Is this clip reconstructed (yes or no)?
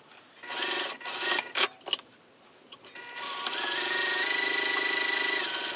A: no